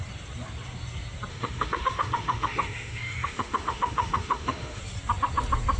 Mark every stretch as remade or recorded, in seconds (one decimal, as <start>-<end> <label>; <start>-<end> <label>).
0.0-1.3 recorded; 1.3-4.8 remade; 4.8-5.8 recorded